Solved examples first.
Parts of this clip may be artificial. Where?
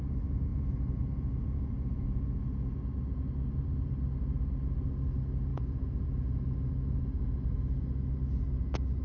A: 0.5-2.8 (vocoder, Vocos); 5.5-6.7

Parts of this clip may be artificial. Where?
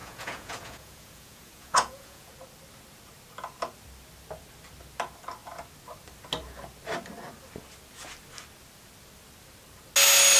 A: 0.0-2.3 (vocoder, Vocos)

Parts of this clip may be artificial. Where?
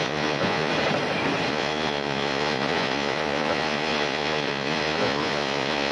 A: 0.0-0.7 (vocoder, Vocos); 1.5-5.9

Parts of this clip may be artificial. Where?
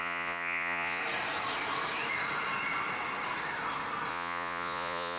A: 0.0-1.0 (vocoder, Vocos); 4.1-5.2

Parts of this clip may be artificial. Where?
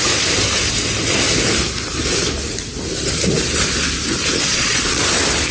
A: 4.5-5.0 (vocoder, Vocos)